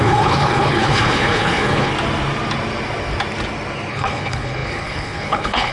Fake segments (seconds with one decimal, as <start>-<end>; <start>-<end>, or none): 0.0-1.9; 3.9-5.7